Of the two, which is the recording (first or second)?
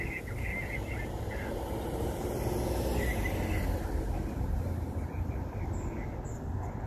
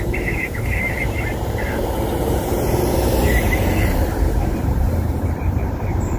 first